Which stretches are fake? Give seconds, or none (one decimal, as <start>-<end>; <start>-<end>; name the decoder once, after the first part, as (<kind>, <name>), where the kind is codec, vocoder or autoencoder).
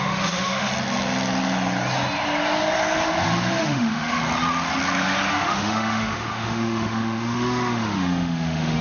0.0-0.7 (autoencoder, DAC-VAE); 3.6-4.2; 5.3-8.8